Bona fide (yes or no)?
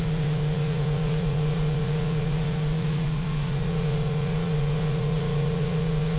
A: no